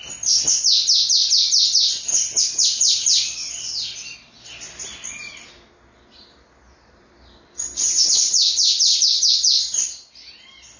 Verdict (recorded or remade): recorded